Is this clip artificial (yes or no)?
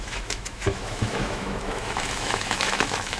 yes